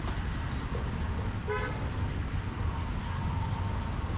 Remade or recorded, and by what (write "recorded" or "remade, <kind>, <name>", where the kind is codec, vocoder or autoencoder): recorded